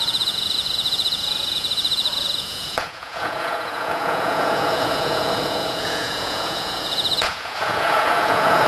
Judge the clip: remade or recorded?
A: remade